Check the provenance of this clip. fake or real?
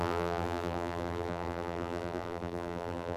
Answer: fake